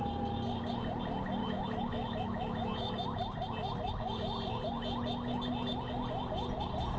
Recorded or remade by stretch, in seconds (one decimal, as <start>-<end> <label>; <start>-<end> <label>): 0.0-1.4 recorded; 1.4-2.9 remade; 2.9-7.0 recorded